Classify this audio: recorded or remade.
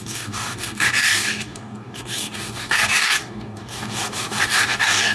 remade